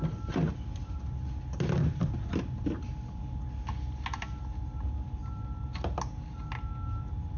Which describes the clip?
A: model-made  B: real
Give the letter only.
B